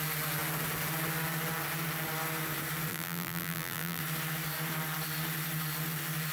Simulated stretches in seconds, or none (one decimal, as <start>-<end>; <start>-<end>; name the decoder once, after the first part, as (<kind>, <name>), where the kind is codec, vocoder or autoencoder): 2.9-4.0 (vocoder, BigVGAN v2)